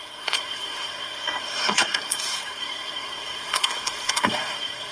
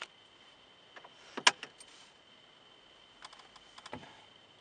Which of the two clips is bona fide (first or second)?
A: second